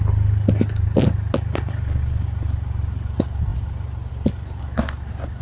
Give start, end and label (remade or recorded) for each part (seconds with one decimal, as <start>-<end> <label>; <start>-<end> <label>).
0.0-5.4 recorded